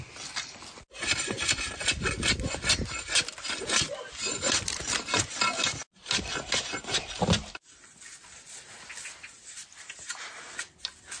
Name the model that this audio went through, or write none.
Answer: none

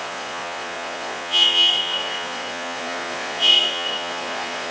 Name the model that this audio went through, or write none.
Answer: vocoder, Vocos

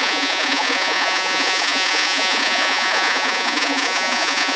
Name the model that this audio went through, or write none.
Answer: vocoder, Vocos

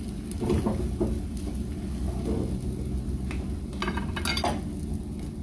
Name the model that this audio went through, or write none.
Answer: none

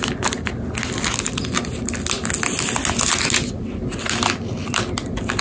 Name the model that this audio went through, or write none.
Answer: none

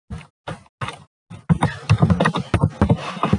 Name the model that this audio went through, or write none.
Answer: none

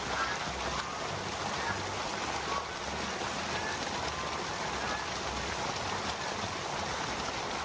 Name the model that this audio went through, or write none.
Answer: none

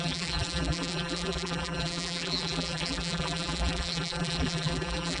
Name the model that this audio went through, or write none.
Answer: vocoder, BigVGAN v2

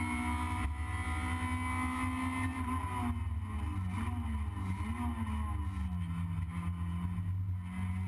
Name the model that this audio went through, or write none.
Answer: none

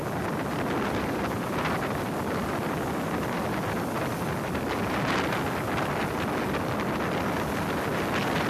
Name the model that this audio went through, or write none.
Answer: none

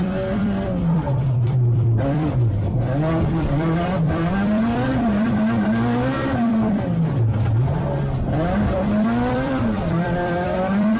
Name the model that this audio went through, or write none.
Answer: vocoder, BigVGAN v2